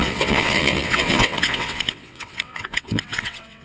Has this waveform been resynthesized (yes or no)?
yes